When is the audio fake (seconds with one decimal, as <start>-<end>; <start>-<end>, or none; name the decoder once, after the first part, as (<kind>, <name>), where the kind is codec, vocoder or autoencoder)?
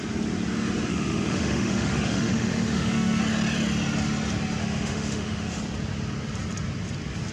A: 0.9-3.2 (autoencoder, DAC-VAE); 4.6-5.6